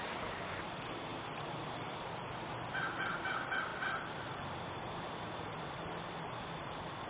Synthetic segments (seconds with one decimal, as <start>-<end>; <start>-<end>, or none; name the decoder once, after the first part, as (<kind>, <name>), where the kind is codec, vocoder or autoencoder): 1.1-2.1 (vocoder, BigVGAN v2)